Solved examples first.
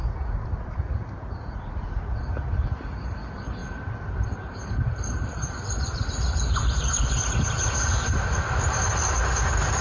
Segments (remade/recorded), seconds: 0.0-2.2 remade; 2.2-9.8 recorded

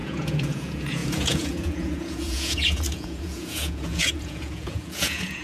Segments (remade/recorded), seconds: 0.0-5.4 remade

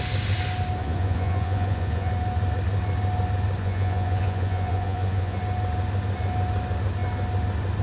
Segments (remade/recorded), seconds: 0.0-0.8 recorded; 0.8-2.1 remade; 2.1-3.6 recorded; 3.6-5.4 remade; 5.4-7.8 recorded

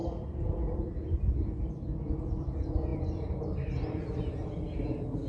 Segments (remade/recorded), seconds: 0.0-5.3 recorded

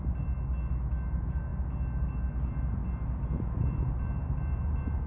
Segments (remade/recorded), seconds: 0.0-5.1 recorded

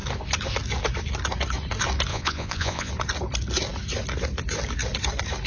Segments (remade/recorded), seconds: 0.0-2.1 recorded; 2.1-2.9 remade; 2.9-5.5 recorded

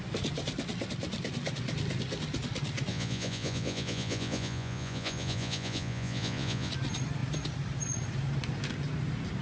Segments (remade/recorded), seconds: 0.0-2.9 recorded; 2.9-6.7 remade; 6.7-9.4 recorded

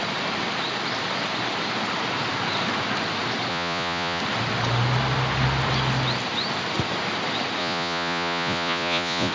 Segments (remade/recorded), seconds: 0.0-3.5 recorded; 3.5-4.2 remade; 4.2-7.6 recorded; 7.6-9.3 remade